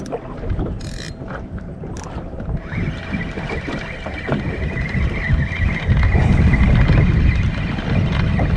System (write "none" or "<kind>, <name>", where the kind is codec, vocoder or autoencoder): none